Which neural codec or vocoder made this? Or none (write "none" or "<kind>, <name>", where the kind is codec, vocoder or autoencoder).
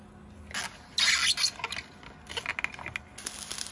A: none